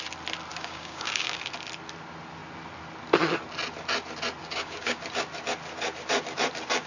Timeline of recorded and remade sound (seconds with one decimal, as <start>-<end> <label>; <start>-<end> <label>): 0.0-0.5 recorded; 0.5-1.4 remade; 1.4-4.4 recorded; 4.4-5.0 remade; 5.0-6.9 recorded